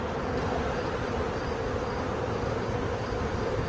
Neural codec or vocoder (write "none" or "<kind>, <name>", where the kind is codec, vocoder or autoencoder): none